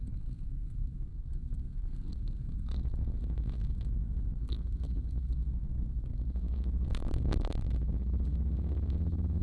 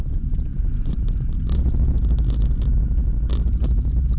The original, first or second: second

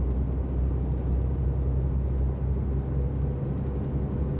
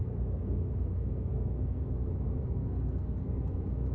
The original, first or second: first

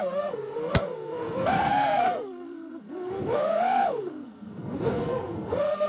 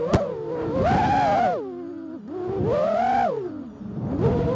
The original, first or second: second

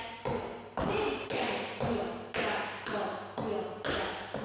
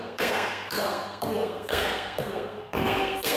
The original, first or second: first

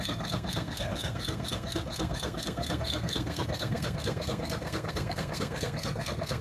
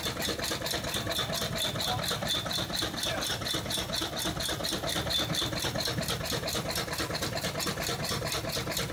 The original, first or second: second